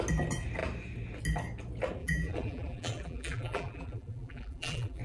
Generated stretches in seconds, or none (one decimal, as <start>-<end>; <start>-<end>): 2.0-5.0